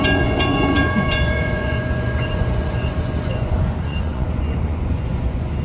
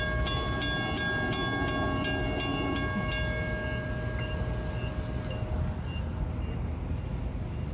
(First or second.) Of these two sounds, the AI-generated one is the first